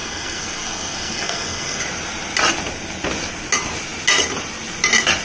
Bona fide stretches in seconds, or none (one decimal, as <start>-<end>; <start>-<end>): 1.8-5.2